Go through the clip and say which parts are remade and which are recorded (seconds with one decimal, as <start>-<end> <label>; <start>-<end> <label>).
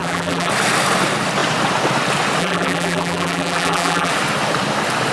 0.0-0.5 remade; 0.5-2.4 recorded; 2.4-4.1 remade; 4.1-5.1 recorded